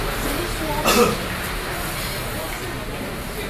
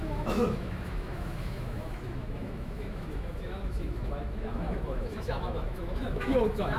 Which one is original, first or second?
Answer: first